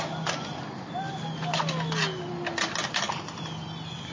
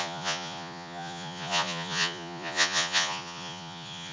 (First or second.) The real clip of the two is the first